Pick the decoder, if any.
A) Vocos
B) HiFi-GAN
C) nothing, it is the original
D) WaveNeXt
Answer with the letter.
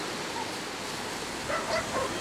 C